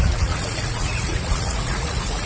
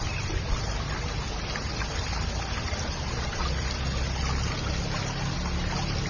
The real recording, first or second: second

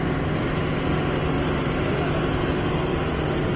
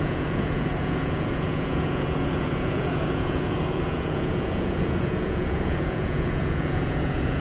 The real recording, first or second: first